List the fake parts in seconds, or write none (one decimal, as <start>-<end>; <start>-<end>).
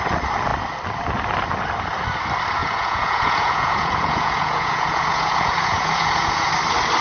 2.6-6.5